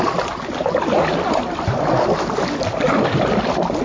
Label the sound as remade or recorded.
recorded